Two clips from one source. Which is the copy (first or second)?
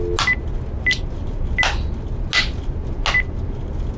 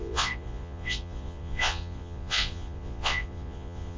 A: second